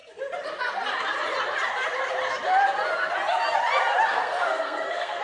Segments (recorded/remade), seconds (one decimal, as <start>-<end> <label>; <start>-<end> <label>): 0.0-4.1 recorded; 4.1-5.2 remade